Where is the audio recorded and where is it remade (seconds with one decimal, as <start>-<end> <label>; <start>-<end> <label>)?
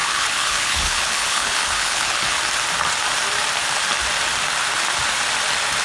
0.0-2.4 remade; 2.4-5.8 recorded